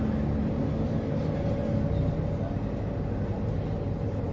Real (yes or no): yes